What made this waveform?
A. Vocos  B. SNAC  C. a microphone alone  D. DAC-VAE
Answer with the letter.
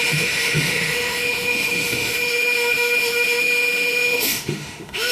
D